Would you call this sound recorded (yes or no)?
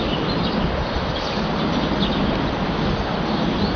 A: yes